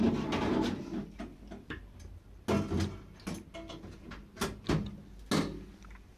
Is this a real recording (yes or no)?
yes